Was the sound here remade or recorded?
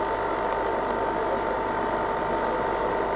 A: recorded